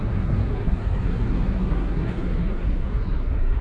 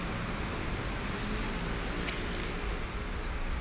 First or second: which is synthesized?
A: first